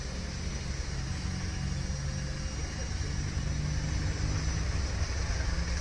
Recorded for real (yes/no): yes